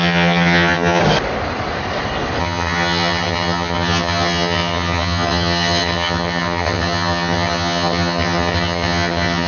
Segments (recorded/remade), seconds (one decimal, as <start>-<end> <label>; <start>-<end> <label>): 0.0-1.0 remade; 1.0-2.4 recorded; 2.4-9.5 remade